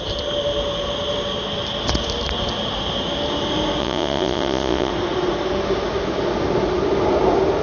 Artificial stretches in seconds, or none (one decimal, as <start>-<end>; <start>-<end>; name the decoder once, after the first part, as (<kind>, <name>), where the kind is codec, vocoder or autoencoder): 3.8-4.9 (vocoder, Vocos)